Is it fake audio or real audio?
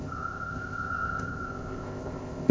fake